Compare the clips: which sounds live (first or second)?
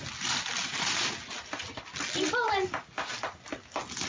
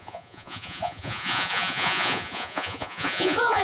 first